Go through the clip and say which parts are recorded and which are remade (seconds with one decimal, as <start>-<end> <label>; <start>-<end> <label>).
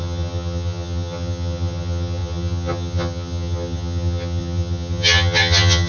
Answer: 0.0-5.9 remade